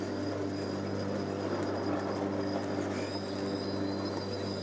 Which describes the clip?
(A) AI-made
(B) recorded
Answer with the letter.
B